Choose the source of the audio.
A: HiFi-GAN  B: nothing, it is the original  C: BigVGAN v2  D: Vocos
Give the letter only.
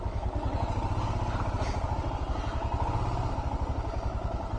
B